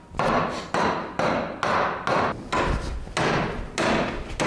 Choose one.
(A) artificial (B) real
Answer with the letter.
B